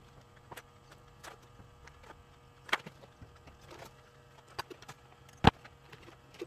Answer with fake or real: real